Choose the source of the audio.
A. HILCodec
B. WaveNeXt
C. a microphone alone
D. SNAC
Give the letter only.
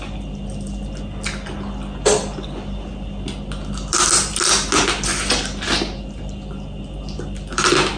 C